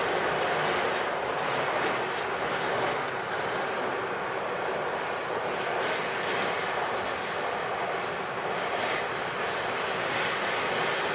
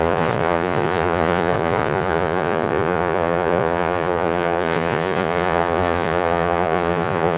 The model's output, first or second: second